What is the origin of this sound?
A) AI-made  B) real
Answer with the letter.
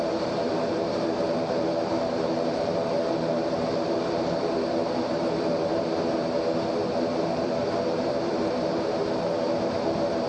A